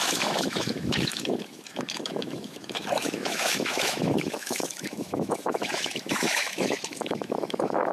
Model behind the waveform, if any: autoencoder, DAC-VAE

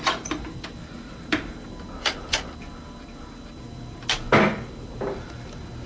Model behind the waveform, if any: none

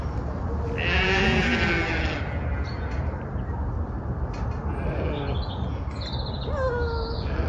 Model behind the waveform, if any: none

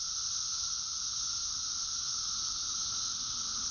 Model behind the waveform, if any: none